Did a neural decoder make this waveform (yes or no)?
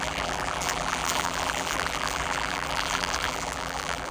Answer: yes